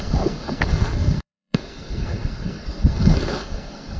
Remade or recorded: remade